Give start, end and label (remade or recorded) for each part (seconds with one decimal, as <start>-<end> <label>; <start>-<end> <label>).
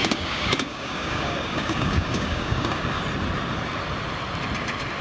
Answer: 0.0-3.0 remade; 3.0-5.0 recorded